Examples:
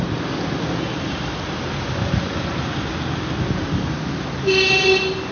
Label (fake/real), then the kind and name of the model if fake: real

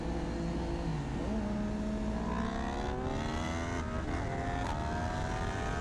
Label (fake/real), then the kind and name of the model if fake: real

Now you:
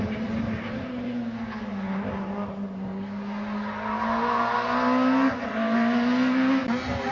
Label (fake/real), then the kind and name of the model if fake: real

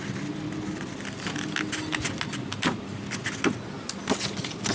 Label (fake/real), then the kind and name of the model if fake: real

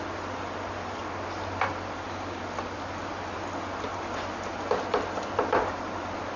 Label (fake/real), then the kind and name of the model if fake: real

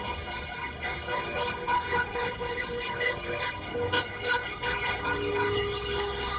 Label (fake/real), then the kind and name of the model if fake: fake, codec, HILCodec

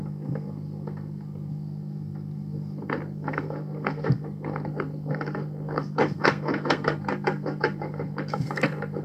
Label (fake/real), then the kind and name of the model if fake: fake, codec, SNAC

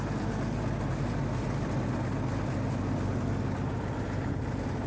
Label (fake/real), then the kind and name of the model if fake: real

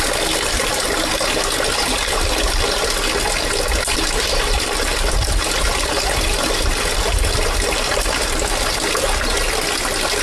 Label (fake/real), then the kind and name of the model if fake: real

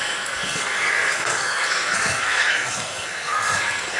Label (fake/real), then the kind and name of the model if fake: fake, codec, SNAC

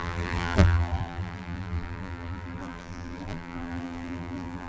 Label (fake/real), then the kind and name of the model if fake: fake, vocoder, BigVGAN v2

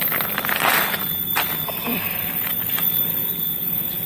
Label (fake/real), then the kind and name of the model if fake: fake, vocoder, BigVGAN v2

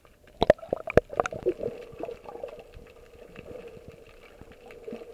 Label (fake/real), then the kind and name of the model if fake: real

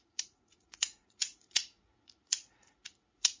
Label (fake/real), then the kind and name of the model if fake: fake, vocoder, Vocos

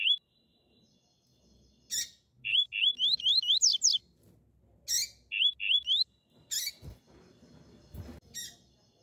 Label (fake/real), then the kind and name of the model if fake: real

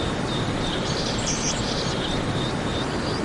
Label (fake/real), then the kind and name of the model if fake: real